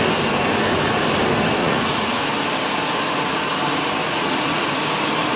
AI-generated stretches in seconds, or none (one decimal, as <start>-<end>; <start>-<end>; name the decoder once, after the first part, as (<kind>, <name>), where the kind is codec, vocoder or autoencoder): 1.6-2.2 (vocoder, Vocos); 4.0-4.7